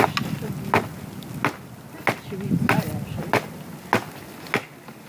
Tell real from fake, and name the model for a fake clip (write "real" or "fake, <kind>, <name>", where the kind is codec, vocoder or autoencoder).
real